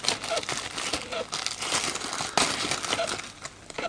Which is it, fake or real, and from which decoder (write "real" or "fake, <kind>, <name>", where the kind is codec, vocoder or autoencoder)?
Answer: real